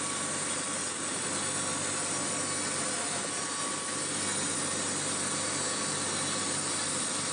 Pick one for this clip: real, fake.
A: real